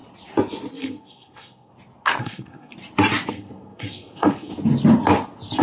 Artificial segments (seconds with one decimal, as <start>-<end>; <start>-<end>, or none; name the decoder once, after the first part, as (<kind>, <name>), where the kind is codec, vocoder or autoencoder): 0.7-1.7 (codec, SNAC); 2.2-2.7; 3.3-4.5